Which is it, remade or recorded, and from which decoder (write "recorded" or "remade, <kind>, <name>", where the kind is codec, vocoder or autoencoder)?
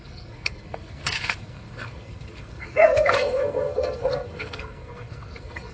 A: remade, codec, SNAC